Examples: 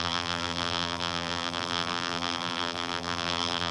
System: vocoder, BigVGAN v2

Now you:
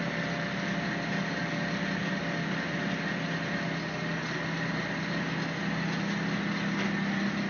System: none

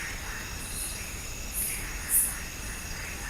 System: none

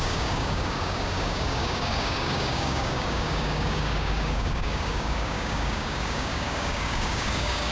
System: codec, DAC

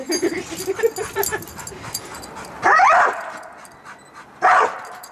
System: none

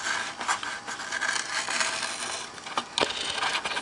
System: none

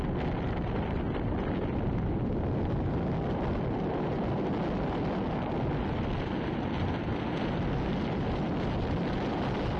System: none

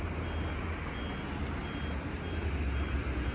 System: none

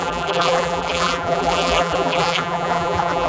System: vocoder, BigVGAN v2